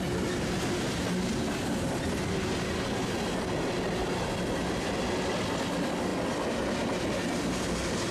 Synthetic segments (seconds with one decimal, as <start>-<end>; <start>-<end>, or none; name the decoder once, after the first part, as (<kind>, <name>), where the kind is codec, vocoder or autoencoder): none